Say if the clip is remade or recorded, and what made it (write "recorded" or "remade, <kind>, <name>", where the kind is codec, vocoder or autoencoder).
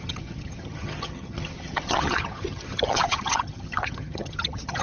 remade, vocoder, HiFi-GAN